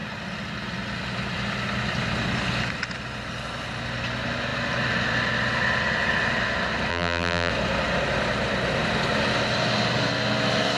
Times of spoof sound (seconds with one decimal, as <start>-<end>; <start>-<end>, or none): 6.9-7.5